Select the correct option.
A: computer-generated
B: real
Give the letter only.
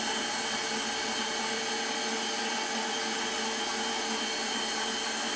B